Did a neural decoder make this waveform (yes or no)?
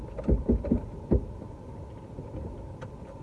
no